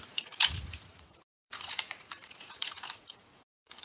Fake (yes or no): yes